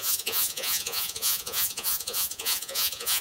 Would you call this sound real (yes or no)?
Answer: no